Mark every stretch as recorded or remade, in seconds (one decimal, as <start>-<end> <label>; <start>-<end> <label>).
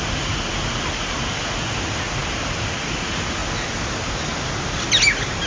0.0-5.5 recorded